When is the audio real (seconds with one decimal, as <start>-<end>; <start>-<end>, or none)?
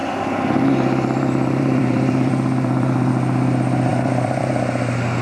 3.1-3.9; 4.5-5.2